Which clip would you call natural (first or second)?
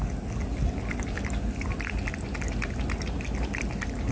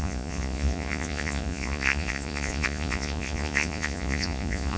first